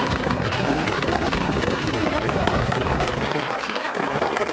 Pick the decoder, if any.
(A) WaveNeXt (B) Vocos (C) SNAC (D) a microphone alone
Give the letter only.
C